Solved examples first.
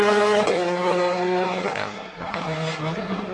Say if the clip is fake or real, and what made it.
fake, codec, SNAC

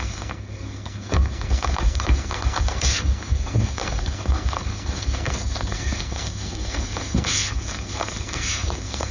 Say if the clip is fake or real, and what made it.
fake, codec, SNAC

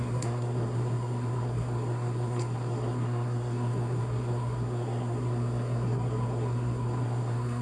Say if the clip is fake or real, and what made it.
fake, codec, SNAC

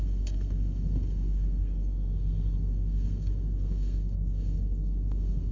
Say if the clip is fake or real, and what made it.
fake, codec, SNAC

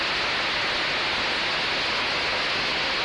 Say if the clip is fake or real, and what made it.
real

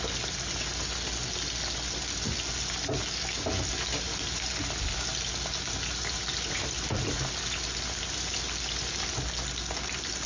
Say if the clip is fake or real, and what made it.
real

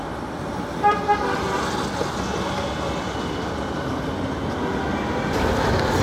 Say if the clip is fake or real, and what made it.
real